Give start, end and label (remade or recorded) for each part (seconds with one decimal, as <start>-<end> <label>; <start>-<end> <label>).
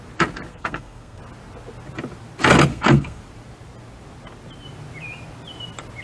0.0-0.5 recorded; 0.5-1.2 remade; 1.2-2.7 recorded; 2.7-3.2 remade; 3.2-6.0 recorded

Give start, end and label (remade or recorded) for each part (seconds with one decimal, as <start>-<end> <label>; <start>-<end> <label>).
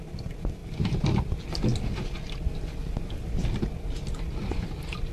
0.0-5.1 recorded